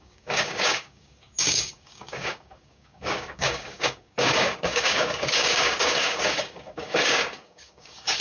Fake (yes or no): yes